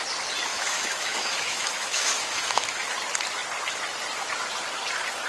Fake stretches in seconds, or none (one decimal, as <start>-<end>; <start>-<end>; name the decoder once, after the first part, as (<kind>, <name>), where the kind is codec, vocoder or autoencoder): 0.5-2.9 (autoencoder, DAC-VAE)